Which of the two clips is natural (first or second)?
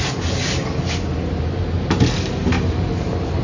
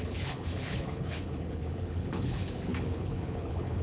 first